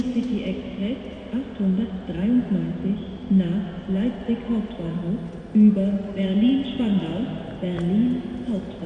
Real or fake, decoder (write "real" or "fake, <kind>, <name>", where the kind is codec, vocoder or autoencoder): real